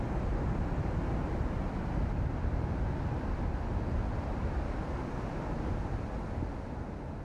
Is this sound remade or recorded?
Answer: recorded